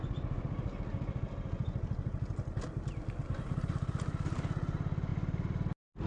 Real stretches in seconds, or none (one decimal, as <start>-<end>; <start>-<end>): 0.0-6.1